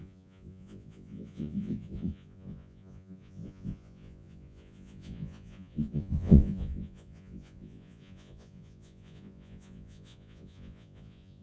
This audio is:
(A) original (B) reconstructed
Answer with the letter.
B